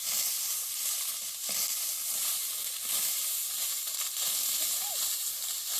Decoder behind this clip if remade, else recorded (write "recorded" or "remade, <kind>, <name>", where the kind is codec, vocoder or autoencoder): recorded